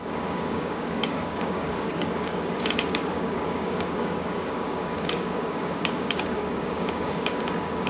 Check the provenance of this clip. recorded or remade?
remade